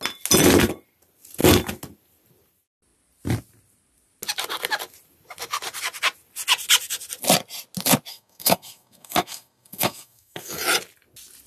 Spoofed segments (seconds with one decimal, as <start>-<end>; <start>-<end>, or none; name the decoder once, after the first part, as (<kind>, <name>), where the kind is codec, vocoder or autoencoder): 8.1-10.5 (codec, SNAC)